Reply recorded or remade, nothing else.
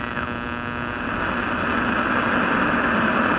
recorded